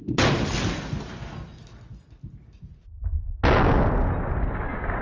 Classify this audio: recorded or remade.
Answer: recorded